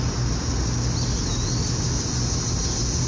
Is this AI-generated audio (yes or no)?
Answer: no